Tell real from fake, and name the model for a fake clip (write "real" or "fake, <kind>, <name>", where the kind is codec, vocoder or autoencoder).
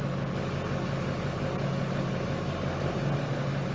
real